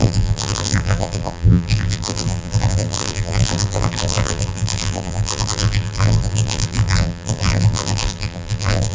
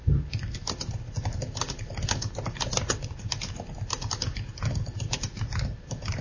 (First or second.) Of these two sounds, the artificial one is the first